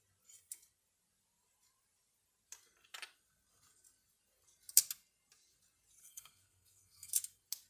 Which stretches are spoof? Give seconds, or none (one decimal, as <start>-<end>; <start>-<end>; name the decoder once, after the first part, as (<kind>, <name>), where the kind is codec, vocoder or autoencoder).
6.0-7.1 (codec, SNAC)